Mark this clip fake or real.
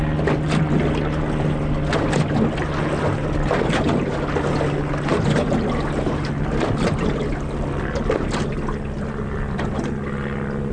real